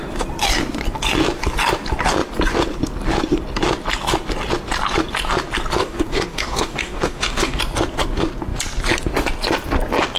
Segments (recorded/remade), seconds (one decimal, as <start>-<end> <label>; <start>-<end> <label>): 0.0-5.8 recorded; 5.8-7.6 remade; 7.6-10.2 recorded